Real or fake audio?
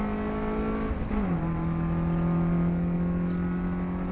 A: real